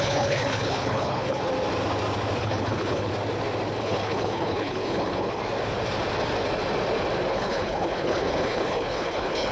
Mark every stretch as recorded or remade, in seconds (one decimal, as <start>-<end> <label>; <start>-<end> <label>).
0.0-1.4 remade; 1.4-2.4 recorded; 2.4-3.1 remade; 3.1-3.8 recorded; 3.8-5.4 remade; 5.4-7.3 recorded; 7.3-9.5 remade